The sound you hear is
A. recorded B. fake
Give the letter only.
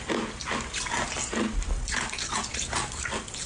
A